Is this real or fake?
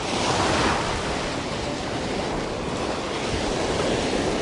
real